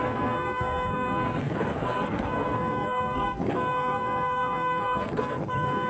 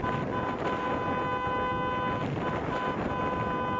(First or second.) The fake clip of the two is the first